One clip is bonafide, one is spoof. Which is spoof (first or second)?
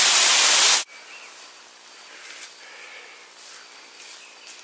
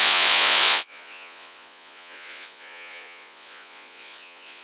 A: second